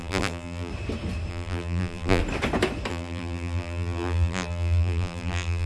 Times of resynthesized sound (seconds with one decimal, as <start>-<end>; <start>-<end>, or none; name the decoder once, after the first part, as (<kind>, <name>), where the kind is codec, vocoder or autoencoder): 0.0-0.7 (vocoder, BigVGAN v2); 1.3-2.2; 2.9-5.7